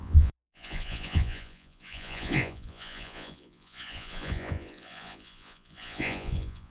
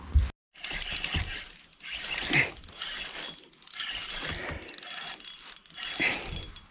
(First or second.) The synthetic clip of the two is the first